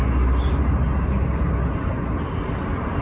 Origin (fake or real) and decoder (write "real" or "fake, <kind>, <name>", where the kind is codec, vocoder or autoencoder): real